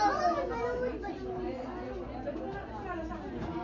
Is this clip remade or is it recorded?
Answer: recorded